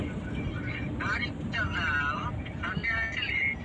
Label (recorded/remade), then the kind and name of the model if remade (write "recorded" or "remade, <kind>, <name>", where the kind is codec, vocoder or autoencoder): recorded